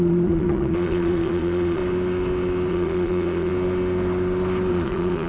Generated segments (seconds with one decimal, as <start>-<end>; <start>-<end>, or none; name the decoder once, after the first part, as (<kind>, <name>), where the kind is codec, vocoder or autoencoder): 0.0-1.8 (vocoder, Vocos); 2.7-3.5; 4.7-5.3